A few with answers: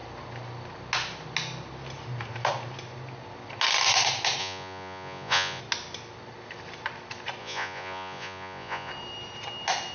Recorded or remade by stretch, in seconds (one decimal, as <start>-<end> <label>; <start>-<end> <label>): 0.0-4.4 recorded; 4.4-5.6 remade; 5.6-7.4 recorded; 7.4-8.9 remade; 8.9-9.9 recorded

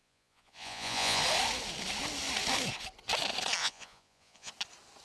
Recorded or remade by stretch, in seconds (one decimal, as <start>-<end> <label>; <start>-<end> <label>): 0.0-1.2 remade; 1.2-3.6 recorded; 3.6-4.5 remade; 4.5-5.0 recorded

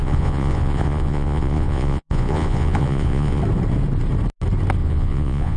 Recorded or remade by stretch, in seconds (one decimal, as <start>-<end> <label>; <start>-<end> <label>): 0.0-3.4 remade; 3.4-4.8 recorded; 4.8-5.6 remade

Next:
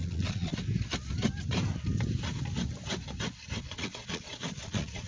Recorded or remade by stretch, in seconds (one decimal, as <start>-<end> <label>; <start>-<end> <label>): 0.0-0.5 remade; 0.5-3.6 recorded; 3.6-5.1 remade

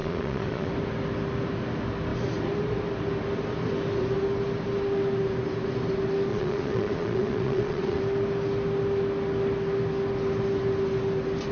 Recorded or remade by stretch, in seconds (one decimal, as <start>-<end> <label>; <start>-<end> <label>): 0.0-0.7 remade; 0.7-6.3 recorded; 6.3-8.0 remade; 8.0-11.5 recorded

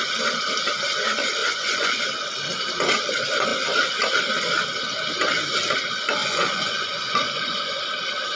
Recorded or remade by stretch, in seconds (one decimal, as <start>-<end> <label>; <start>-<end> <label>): 0.0-1.4 recorded; 1.4-2.0 remade; 2.0-6.2 recorded; 6.2-7.8 remade; 7.8-8.4 recorded

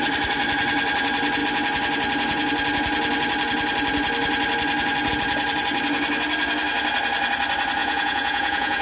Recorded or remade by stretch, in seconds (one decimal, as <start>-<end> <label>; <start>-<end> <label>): 0.0-7.8 recorded; 7.8-8.8 remade